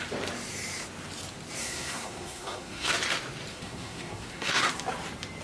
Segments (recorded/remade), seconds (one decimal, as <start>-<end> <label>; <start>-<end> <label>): 0.0-1.6 recorded; 1.6-2.9 remade; 2.9-3.5 recorded; 3.5-4.7 remade; 4.7-5.4 recorded